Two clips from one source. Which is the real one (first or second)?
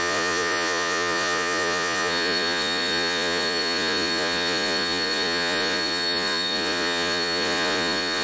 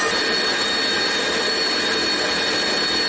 second